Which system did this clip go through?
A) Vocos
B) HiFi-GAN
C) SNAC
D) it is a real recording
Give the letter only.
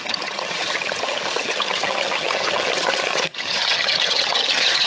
B